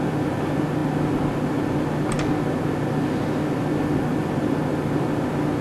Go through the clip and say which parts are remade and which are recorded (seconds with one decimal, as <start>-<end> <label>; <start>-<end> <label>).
0.0-5.6 recorded